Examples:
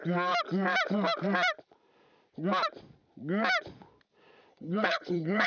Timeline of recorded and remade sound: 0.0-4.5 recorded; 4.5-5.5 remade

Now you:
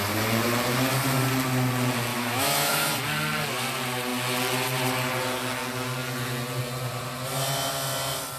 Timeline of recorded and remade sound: 0.0-2.1 recorded; 2.1-2.9 remade; 2.9-8.4 recorded